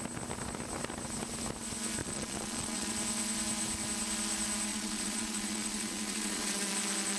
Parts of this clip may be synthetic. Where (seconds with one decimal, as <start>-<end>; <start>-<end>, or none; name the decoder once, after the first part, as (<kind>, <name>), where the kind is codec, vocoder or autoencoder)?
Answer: 2.0-2.9 (vocoder, Vocos); 4.7-6.7